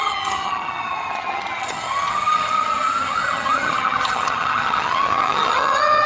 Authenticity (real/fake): fake